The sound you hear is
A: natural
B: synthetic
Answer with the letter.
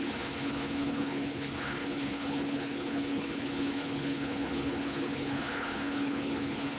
B